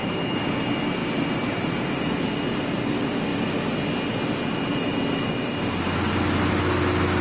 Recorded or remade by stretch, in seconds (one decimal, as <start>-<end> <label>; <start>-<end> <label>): 0.0-0.6 remade; 0.6-1.0 recorded; 1.0-2.0 remade; 2.0-7.2 recorded